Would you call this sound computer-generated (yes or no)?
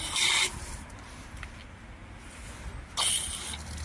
no